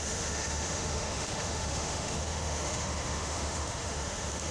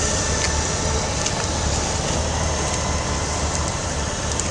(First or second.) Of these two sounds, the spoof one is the first